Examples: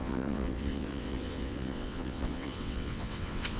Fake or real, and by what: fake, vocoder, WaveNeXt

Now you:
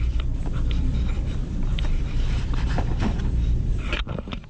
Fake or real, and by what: fake, vocoder, BigVGAN v2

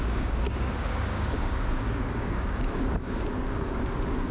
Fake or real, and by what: fake, codec, DAC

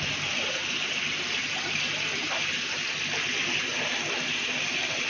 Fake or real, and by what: real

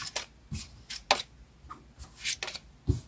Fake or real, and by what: real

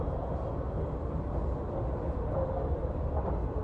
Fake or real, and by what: real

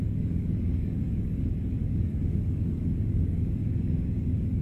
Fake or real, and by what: fake, codec, DAC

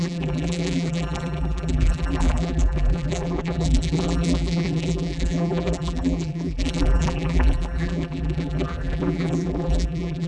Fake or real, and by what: fake, vocoder, BigVGAN v2